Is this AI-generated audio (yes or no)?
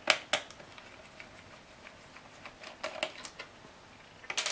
no